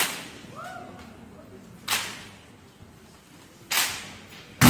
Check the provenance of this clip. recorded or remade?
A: recorded